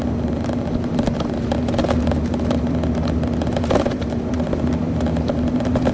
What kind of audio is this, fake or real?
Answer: real